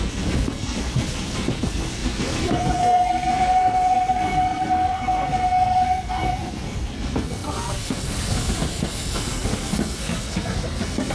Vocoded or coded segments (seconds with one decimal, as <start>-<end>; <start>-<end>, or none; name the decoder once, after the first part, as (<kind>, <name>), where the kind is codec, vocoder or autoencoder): 0.0-11.1 (codec, SNAC)